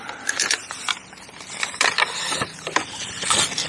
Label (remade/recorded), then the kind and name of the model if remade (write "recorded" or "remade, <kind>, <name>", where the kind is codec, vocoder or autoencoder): recorded